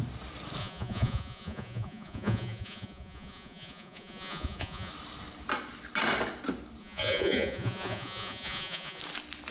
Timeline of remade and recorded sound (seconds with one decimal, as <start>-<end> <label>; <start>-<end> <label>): 0.0-0.6 recorded; 0.6-4.9 remade; 4.9-6.8 recorded; 6.8-9.0 remade; 9.0-9.5 recorded